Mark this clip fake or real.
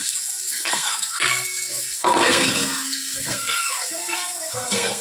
fake